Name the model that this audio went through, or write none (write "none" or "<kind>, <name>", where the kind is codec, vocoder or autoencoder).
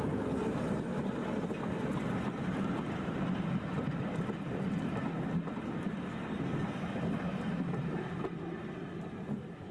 none